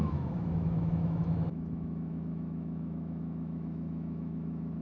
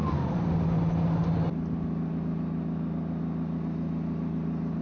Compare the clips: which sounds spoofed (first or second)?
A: first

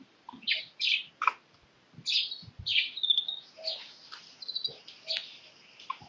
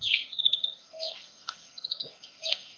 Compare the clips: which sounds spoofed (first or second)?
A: second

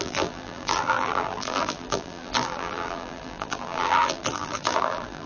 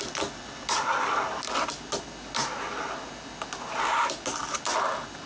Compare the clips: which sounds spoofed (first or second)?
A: first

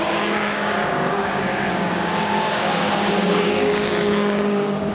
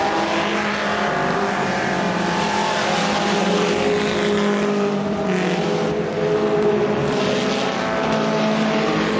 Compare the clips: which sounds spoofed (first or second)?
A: first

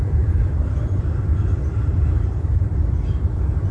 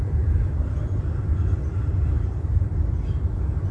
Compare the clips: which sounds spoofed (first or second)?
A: first